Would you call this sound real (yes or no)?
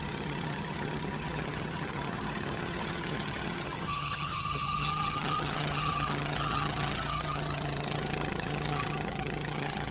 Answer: no